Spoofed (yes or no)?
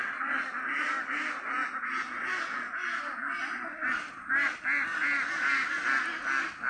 no